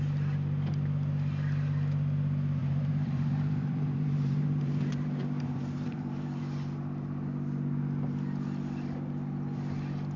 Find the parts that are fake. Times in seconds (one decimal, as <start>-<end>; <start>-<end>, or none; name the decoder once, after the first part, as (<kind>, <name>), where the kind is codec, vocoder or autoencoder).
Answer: 2.6-6.4 (vocoder, BigVGAN v2)